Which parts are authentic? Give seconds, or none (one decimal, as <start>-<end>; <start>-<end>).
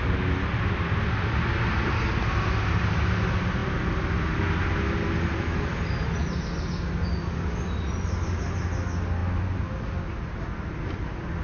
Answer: 0.0-11.4